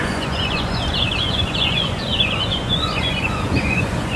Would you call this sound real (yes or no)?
no